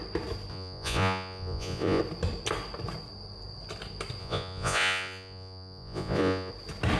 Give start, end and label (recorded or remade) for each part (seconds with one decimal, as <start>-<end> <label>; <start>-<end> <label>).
0.0-0.5 recorded; 0.5-2.0 remade; 2.0-4.2 recorded; 4.2-6.5 remade; 6.5-7.0 recorded